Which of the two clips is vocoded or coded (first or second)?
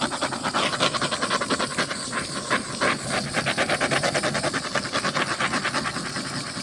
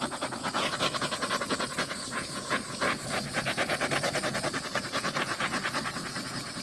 second